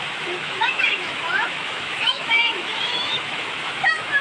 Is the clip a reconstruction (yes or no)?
yes